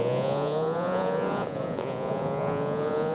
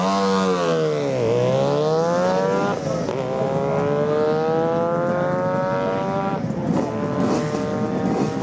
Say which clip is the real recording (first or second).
second